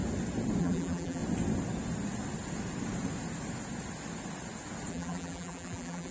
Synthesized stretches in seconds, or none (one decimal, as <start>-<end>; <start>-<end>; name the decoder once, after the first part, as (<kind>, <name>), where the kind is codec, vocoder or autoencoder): 0.6-1.2 (vocoder, BigVGAN v2); 4.9-6.1